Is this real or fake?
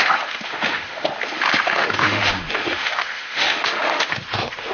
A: fake